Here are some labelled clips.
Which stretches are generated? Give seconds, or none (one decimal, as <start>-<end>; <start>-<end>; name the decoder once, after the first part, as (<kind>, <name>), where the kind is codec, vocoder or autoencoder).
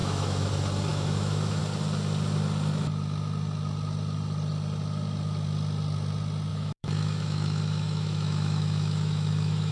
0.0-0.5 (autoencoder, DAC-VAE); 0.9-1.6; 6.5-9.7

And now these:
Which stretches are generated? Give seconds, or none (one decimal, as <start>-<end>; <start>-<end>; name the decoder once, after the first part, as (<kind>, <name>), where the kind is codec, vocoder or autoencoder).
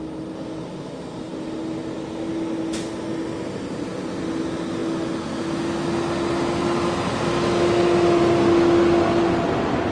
none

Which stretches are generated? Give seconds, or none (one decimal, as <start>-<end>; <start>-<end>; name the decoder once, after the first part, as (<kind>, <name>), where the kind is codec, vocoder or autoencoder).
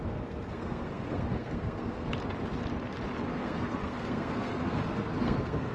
0.0-2.1 (codec, SNAC); 3.3-5.7